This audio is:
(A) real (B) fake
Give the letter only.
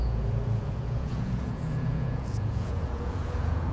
B